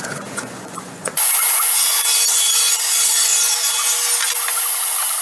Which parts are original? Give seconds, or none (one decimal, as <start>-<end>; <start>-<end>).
3.3-5.2